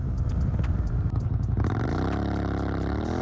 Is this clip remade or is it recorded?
recorded